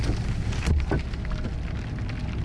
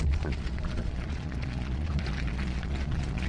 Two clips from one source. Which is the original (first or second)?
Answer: first